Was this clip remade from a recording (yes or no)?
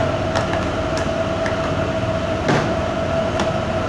no